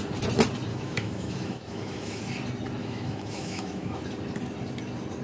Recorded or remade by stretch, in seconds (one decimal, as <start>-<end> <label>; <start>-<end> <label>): 0.0-0.7 recorded; 0.7-2.2 remade; 2.2-2.8 recorded; 2.8-4.0 remade; 4.0-5.2 recorded